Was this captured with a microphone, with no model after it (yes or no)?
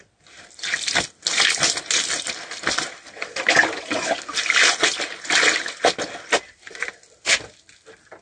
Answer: yes